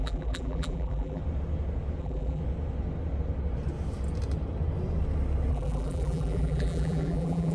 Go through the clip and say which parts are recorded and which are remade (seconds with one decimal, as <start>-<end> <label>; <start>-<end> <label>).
0.0-1.2 remade; 1.2-2.0 recorded; 2.0-2.4 remade; 2.4-5.5 recorded; 5.5-7.5 remade